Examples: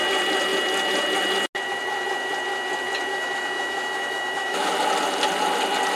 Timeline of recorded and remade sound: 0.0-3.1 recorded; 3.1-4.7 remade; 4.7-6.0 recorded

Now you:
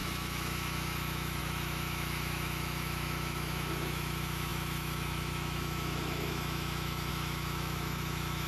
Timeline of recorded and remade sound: 0.0-8.5 remade

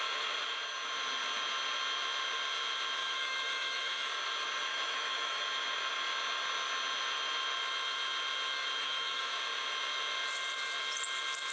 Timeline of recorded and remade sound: 0.0-3.0 recorded; 3.0-4.1 remade; 4.1-4.7 recorded; 4.7-5.4 remade; 5.4-8.8 recorded; 8.8-9.4 remade; 9.4-11.5 recorded